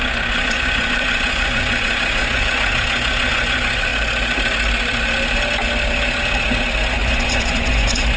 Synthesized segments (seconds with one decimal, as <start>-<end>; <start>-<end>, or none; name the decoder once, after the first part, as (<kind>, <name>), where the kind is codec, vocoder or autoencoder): 0.0-3.9 (vocoder, Vocos); 6.9-8.2